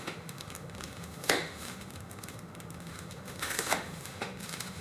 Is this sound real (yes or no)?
no